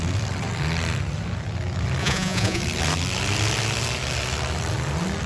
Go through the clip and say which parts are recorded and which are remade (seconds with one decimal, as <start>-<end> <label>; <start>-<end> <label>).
0.0-2.0 recorded; 2.0-2.6 remade; 2.6-5.3 recorded